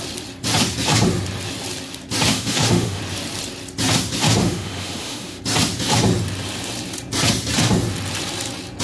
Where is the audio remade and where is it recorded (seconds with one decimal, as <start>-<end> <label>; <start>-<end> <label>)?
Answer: 0.0-2.3 recorded; 2.3-3.0 remade; 3.0-4.4 recorded; 4.4-5.4 remade; 5.4-8.8 recorded